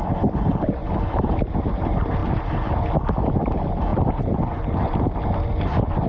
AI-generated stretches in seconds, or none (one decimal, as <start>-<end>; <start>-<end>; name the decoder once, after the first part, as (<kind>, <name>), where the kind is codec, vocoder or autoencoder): none